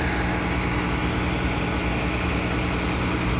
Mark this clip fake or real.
real